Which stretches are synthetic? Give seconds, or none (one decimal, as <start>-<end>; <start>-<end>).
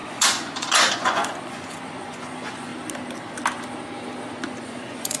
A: 0.0-2.7; 4.6-5.2